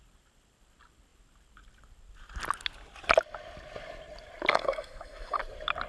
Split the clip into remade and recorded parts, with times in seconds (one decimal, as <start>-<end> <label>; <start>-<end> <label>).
0.0-4.5 recorded; 4.5-5.4 remade; 5.4-5.9 recorded